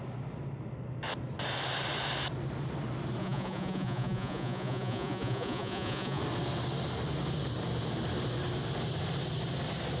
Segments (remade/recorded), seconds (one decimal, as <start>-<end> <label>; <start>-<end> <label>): 0.0-3.2 recorded; 3.2-6.2 remade; 6.2-10.0 recorded